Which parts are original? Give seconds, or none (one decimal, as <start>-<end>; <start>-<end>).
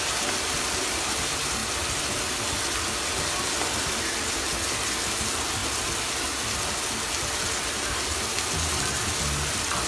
0.0-9.9